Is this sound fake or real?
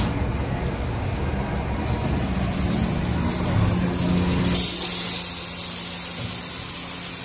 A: real